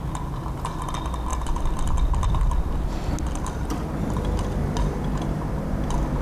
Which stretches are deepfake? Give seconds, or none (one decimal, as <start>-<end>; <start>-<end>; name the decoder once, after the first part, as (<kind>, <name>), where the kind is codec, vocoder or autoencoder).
none